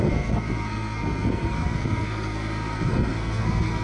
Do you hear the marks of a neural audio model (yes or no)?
yes